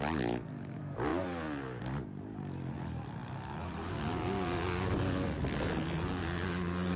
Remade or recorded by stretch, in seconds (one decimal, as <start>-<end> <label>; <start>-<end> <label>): 0.0-7.0 recorded